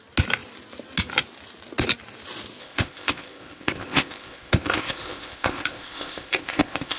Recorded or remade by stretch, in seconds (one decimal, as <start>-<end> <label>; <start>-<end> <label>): 0.0-2.6 recorded; 2.6-7.0 remade